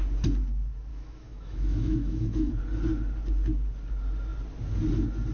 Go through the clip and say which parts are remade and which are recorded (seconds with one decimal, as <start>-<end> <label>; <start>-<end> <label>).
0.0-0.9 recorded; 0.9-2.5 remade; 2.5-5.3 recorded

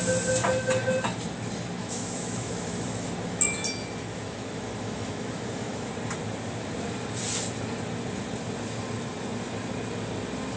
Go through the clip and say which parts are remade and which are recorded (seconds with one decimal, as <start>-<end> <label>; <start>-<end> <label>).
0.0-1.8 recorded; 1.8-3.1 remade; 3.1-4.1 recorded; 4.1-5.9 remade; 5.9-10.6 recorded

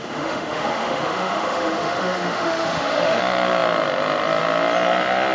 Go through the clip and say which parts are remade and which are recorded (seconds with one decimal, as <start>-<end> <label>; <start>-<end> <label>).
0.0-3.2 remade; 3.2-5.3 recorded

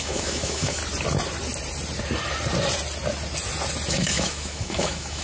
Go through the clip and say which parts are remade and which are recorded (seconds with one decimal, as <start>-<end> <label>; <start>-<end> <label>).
0.0-0.8 remade; 0.8-3.9 recorded; 3.9-5.2 remade

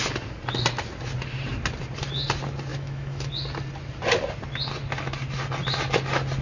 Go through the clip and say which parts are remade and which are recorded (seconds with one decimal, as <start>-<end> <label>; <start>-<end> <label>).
0.0-2.7 recorded; 2.7-3.3 remade; 3.3-6.4 recorded